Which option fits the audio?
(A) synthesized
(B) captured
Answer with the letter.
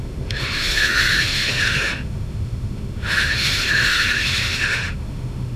A